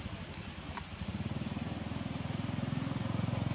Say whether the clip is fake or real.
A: real